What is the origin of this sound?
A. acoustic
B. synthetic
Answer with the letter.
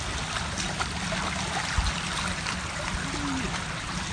A